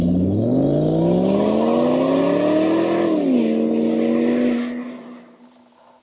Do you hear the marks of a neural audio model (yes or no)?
no